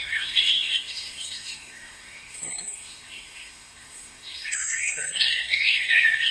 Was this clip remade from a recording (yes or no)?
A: yes